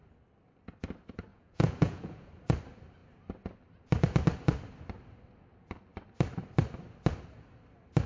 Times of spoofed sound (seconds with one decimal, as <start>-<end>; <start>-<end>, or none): 1.3-2.3